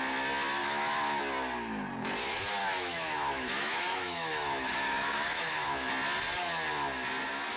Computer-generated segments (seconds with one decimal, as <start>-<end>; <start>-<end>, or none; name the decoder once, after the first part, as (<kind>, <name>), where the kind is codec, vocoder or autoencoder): 0.6-1.2 (autoencoder, DAC-VAE); 2.6-5.9